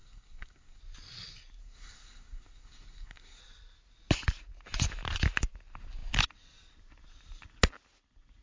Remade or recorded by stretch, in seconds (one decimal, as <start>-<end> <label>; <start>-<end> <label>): 0.0-0.8 remade; 0.8-1.6 recorded; 1.6-3.4 remade; 3.4-8.4 recorded